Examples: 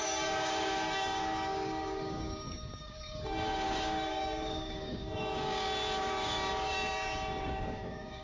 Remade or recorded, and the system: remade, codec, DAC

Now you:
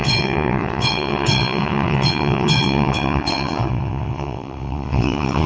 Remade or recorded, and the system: remade, vocoder, WaveNeXt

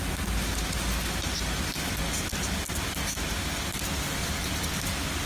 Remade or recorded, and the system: recorded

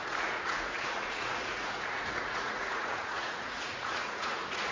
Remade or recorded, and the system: remade, vocoder, Vocos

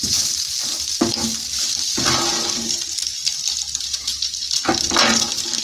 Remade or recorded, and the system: recorded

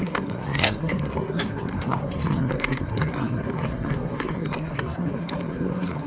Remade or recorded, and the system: remade, codec, SNAC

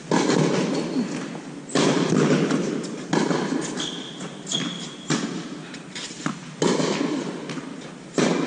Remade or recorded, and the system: recorded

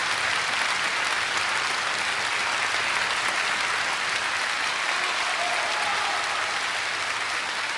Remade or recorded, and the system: recorded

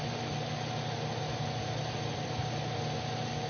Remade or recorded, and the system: recorded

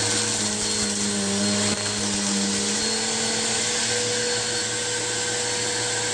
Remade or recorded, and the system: recorded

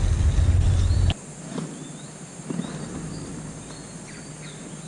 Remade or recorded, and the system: recorded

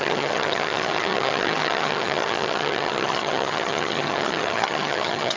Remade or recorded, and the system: remade, vocoder, HiFi-GAN